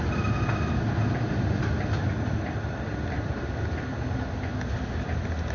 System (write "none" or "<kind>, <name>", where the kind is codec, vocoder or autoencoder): none